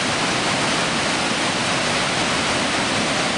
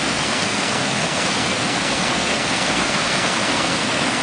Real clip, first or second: first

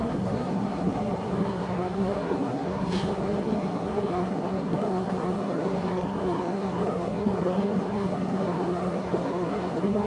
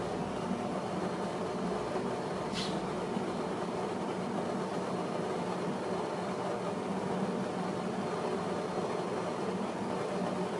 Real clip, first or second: second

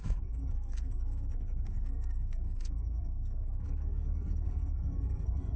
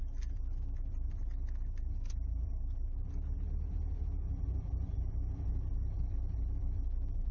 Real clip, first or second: second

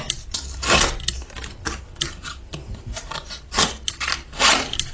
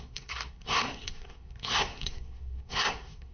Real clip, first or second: first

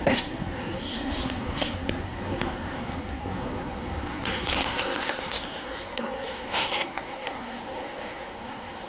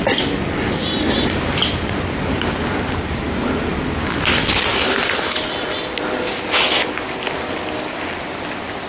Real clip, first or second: second